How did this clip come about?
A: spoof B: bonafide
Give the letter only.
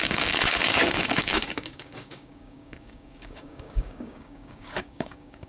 A